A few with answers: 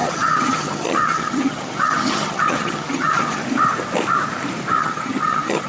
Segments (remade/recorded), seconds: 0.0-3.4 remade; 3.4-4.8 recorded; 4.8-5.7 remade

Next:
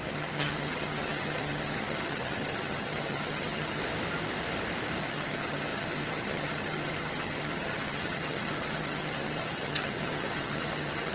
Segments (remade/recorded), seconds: 0.0-3.8 remade; 3.8-5.0 recorded; 5.0-11.1 remade